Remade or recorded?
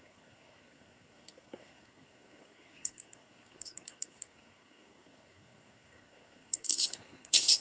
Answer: remade